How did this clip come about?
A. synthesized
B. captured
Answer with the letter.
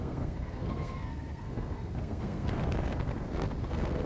A